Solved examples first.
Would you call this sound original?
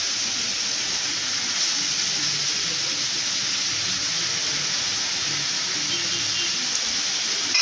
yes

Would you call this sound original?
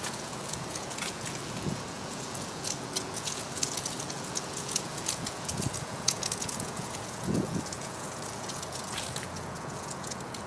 no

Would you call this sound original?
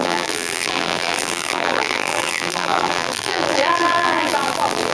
no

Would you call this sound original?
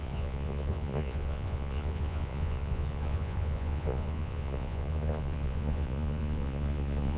no